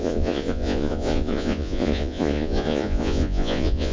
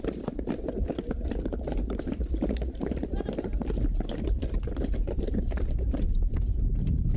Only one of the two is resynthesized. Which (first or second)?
first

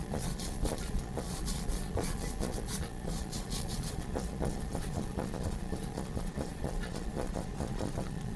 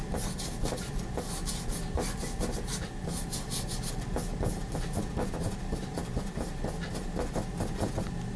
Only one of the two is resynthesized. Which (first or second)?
first